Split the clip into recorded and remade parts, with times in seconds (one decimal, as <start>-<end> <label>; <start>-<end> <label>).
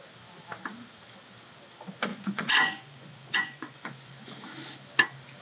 0.0-2.1 recorded; 2.1-4.1 remade; 4.1-5.4 recorded